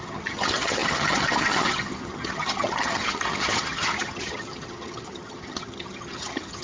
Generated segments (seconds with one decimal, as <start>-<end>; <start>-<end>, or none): 0.0-6.6